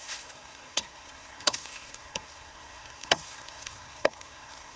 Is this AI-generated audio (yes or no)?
yes